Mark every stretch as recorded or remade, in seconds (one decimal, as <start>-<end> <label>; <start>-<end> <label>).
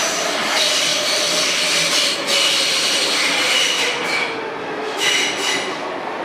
0.0-4.6 recorded; 4.6-5.1 remade; 5.1-6.2 recorded